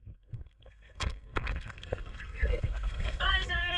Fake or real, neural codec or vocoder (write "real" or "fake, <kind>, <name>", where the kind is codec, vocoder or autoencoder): fake, codec, SNAC